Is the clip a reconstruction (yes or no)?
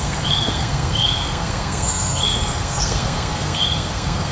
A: yes